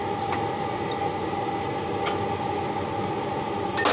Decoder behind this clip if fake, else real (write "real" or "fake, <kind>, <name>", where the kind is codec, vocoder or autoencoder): real